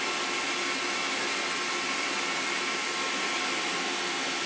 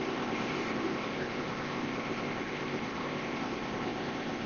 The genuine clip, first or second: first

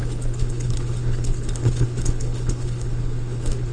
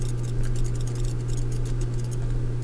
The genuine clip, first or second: second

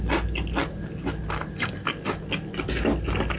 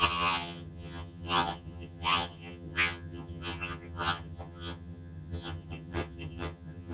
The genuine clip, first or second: first